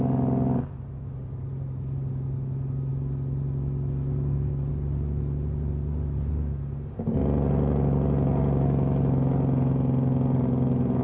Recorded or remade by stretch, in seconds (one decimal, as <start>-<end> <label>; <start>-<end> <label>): 0.0-11.0 recorded